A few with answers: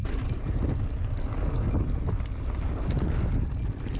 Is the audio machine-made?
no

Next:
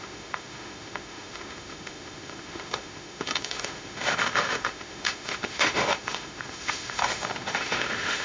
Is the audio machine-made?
yes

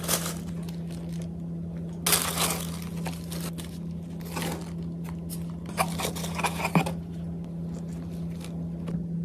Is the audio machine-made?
no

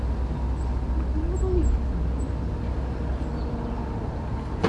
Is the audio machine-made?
no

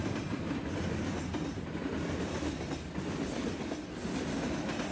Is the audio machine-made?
no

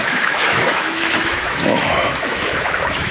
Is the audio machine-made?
yes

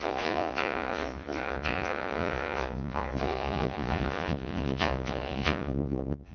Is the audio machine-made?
yes